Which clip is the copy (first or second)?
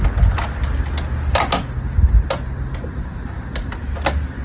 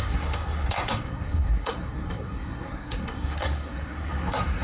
second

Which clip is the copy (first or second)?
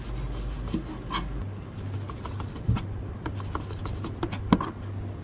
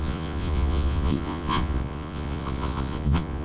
second